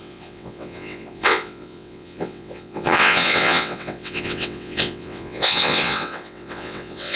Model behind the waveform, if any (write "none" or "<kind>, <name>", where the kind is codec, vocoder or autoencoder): vocoder, WaveNeXt